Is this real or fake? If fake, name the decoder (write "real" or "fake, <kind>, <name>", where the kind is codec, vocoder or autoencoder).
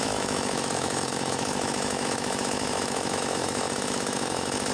fake, autoencoder, DAC-VAE